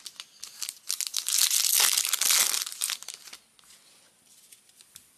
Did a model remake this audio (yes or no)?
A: no